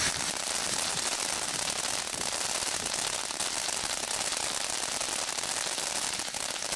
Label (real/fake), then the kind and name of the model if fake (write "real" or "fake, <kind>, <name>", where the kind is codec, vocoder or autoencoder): real